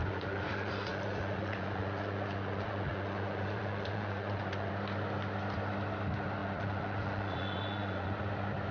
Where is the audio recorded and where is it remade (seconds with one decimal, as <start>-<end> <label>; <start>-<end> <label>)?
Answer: 0.0-4.7 remade; 4.7-6.4 recorded; 6.4-8.2 remade; 8.2-8.7 recorded

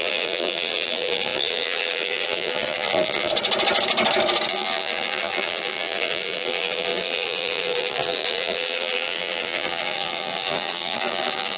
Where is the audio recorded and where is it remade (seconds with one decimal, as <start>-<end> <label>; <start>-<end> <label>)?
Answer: 0.0-3.3 remade; 3.3-4.5 recorded; 4.5-11.6 remade

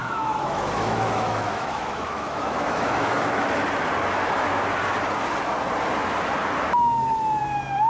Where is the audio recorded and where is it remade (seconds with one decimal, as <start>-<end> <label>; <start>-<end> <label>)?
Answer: 0.0-3.6 remade; 3.6-7.9 recorded

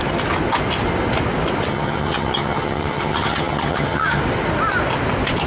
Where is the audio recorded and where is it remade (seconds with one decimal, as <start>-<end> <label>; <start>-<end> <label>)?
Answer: 0.0-1.7 recorded; 1.7-4.2 remade; 4.2-5.5 recorded